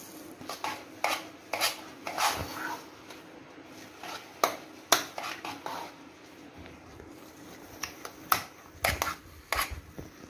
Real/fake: real